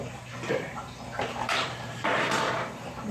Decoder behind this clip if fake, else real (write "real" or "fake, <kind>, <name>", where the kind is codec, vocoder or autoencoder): fake, vocoder, BigVGAN v2